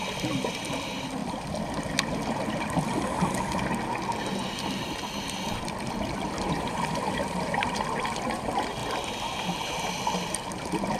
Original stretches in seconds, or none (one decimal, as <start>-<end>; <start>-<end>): 1.2-5.8